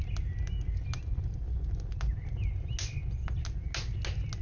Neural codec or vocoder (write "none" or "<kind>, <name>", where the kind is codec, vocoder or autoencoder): none